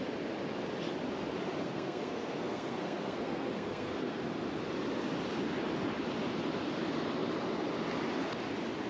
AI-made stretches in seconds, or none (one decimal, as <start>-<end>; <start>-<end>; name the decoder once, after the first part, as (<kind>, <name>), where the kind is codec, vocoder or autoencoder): 1.6-4.2 (codec, SNAC)